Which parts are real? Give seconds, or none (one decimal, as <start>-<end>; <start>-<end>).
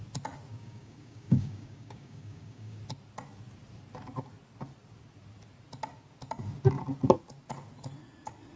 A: 0.0-0.5; 2.8-8.6